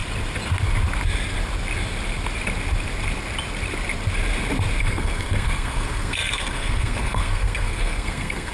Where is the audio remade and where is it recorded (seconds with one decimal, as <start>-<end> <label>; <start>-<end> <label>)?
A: 0.0-4.8 recorded; 4.8-8.5 remade